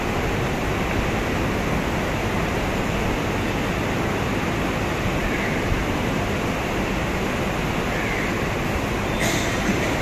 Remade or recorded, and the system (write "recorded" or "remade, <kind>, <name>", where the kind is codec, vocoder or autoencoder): recorded